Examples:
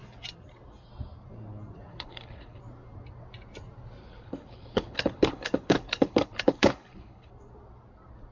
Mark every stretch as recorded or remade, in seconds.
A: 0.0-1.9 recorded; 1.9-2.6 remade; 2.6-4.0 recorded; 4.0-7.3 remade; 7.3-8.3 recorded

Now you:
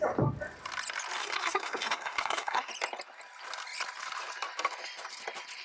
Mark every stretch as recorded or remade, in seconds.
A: 0.0-1.2 recorded; 1.2-2.7 remade; 2.7-5.6 recorded

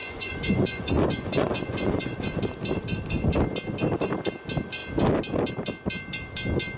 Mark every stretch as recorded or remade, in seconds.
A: 0.0-2.4 remade; 2.4-6.8 recorded

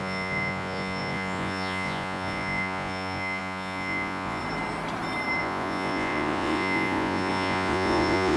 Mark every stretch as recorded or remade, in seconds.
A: 0.0-4.4 remade; 4.4-5.4 recorded; 5.4-8.4 remade

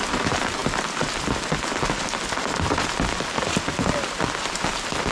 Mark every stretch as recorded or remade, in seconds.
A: 0.0-5.1 recorded

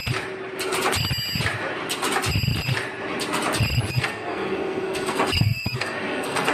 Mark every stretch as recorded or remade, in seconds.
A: 0.0-3.9 recorded; 3.9-6.5 remade